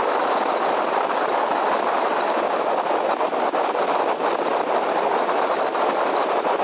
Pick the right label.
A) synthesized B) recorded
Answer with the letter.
B